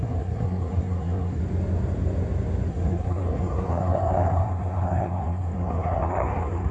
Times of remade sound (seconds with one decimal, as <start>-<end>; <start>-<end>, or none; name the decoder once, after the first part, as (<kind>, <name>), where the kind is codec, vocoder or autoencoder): 0.0-1.4 (codec, SNAC); 2.7-6.7